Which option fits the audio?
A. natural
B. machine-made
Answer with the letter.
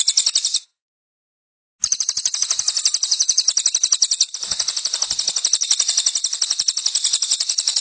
A